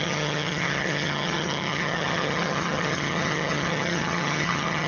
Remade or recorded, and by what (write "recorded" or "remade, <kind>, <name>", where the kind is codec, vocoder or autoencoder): remade, vocoder, HiFi-GAN